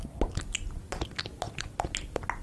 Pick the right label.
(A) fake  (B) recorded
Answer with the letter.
B